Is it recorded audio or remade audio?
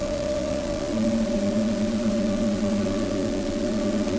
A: remade